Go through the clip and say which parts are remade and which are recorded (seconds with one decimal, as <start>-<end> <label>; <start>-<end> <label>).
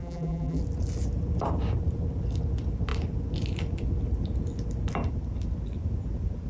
0.0-0.6 remade; 0.6-6.5 recorded